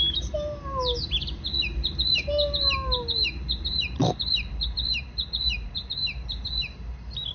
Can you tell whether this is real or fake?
fake